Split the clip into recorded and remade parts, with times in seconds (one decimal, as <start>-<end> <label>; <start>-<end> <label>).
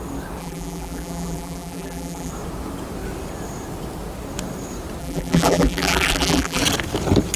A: 0.0-0.4 recorded; 0.4-2.3 remade; 2.3-5.0 recorded; 5.0-6.6 remade; 6.6-7.4 recorded